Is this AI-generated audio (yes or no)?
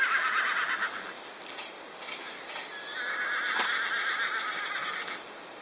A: no